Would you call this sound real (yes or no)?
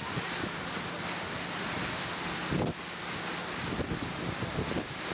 yes